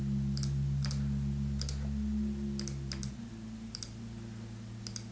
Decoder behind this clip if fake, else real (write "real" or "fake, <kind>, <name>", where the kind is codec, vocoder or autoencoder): real